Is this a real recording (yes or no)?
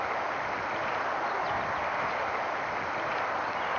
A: yes